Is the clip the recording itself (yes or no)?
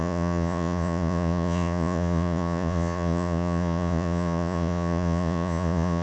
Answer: no